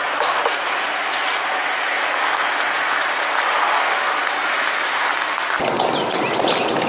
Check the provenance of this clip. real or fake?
real